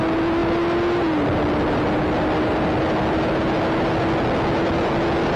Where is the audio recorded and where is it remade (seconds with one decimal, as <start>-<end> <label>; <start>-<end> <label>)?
0.0-5.4 recorded